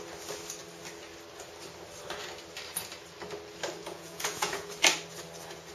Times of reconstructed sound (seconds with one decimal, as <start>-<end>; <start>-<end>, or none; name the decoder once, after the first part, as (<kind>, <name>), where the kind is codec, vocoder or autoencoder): 3.8-4.7 (vocoder, Vocos)